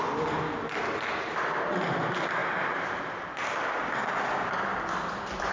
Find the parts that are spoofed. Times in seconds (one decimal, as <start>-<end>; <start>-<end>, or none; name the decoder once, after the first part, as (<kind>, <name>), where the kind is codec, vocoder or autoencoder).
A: none